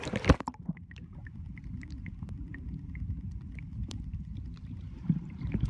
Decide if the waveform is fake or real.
fake